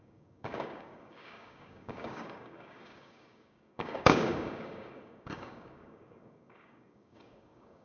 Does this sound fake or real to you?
fake